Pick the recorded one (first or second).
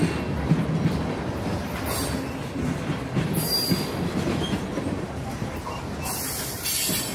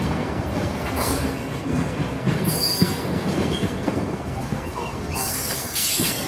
first